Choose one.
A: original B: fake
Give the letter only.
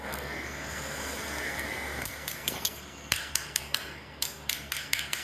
B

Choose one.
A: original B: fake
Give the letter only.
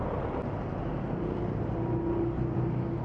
A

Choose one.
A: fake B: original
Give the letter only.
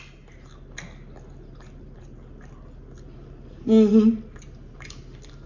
B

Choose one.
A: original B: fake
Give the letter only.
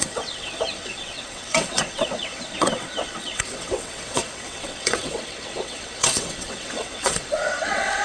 B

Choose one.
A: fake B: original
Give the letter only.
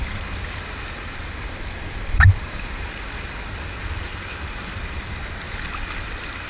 B